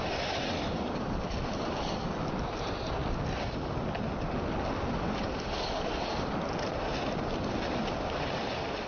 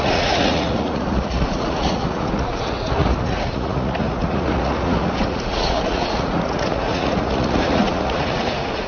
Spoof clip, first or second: second